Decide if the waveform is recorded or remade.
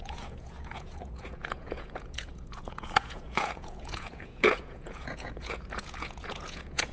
remade